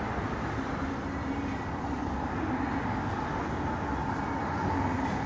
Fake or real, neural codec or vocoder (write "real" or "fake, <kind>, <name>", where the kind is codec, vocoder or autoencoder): real